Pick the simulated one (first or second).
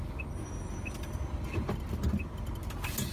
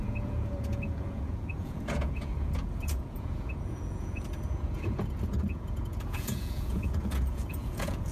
second